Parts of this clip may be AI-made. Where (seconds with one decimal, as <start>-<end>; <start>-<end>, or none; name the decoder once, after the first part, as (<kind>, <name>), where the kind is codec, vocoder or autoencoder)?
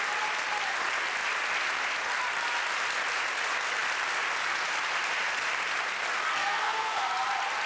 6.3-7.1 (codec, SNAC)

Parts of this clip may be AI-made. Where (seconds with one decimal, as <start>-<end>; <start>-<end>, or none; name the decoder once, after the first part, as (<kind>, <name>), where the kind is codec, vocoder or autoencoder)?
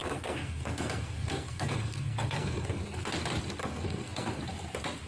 0.0-3.1 (codec, SNAC); 3.6-4.4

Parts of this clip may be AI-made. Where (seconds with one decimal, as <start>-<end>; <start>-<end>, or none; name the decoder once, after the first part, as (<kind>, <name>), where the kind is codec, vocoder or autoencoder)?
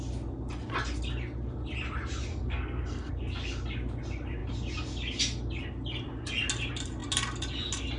2.3-3.1 (codec, SNAC)